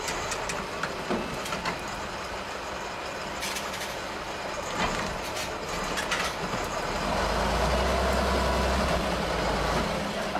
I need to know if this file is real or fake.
real